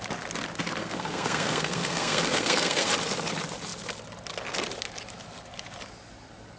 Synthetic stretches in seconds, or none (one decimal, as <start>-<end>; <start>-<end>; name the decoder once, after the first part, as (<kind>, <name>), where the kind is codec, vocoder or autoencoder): 0.8-2.9 (codec, SNAC)